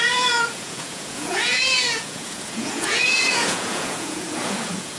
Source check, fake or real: fake